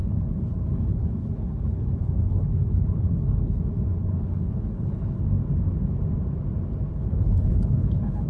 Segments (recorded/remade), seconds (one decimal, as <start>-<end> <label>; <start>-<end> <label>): 0.0-3.6 remade; 3.6-4.0 recorded; 4.0-5.2 remade; 5.2-6.9 recorded; 6.9-8.3 remade